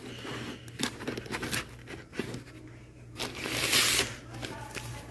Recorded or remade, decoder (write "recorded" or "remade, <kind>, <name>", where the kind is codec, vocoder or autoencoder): recorded